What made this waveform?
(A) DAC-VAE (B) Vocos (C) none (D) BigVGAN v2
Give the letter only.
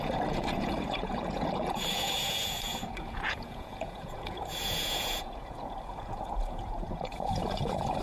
B